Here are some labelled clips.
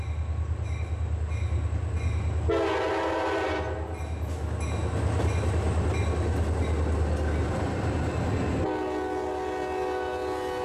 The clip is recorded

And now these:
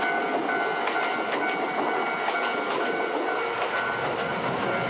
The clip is recorded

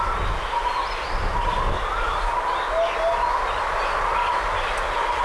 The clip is recorded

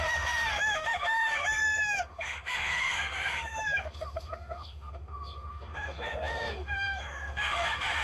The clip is remade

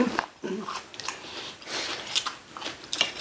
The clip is recorded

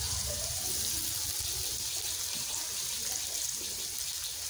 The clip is recorded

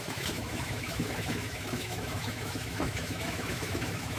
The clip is remade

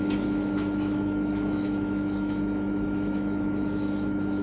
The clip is remade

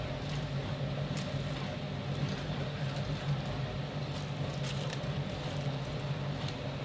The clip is recorded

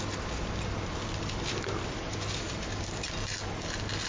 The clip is recorded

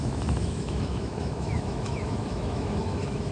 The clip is remade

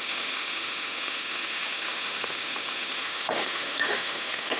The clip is remade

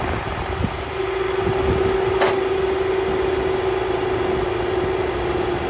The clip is recorded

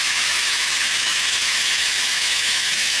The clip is remade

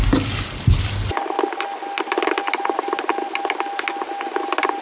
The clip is recorded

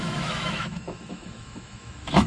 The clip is remade